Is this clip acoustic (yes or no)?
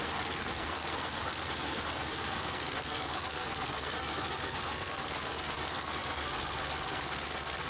no